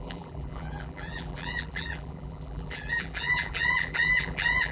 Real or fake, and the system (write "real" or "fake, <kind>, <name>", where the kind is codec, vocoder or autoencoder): fake, vocoder, BigVGAN v2